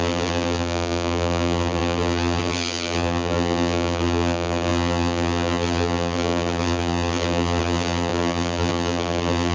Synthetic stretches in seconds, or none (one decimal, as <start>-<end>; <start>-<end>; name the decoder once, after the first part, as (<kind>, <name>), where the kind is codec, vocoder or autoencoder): 0.0-9.5 (vocoder, BigVGAN v2)

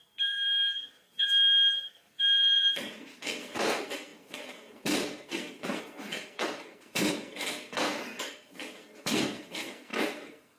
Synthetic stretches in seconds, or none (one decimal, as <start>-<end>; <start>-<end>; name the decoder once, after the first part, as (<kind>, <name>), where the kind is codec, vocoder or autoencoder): 0.0-10.6 (codec, SNAC)